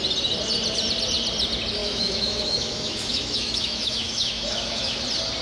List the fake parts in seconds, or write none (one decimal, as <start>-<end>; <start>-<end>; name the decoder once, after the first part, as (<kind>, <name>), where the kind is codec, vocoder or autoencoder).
1.8-5.0 (autoencoder, DAC-VAE)

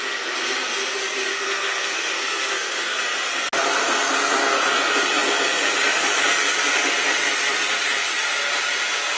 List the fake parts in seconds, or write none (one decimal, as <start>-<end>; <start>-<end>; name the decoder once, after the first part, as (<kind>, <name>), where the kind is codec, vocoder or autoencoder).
1.3-3.0 (codec, SNAC)